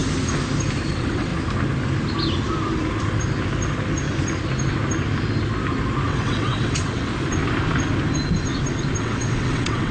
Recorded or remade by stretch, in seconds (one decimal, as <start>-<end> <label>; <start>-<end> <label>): 0.0-0.9 recorded; 0.9-1.3 remade; 1.3-6.1 recorded; 6.1-7.1 remade; 7.1-9.0 recorded; 9.0-9.9 remade